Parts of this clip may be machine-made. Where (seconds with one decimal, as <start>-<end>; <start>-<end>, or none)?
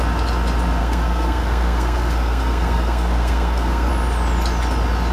0.8-3.9